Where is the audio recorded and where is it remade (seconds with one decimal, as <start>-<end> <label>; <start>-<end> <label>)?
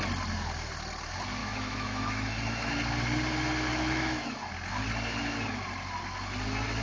0.0-1.4 recorded; 1.4-2.7 remade; 2.7-3.7 recorded; 3.7-4.5 remade; 4.5-6.8 recorded